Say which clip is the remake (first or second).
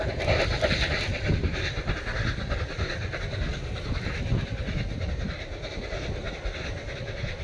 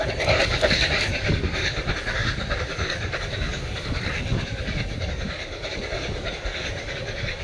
second